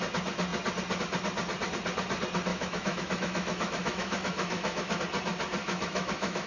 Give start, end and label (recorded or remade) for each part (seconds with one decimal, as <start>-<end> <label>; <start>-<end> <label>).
0.0-2.5 recorded; 2.5-5.0 remade; 5.0-5.6 recorded; 5.6-6.5 remade